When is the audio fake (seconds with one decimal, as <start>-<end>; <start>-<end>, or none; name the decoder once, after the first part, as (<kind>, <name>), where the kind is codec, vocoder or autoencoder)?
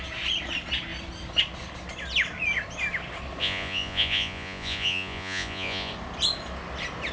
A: 3.4-5.9 (vocoder, Vocos)